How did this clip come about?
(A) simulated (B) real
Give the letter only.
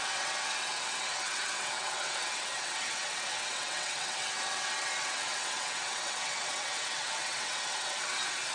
A